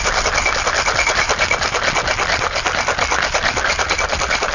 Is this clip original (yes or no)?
yes